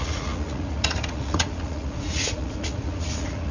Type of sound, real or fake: fake